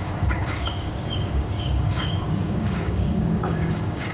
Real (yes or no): no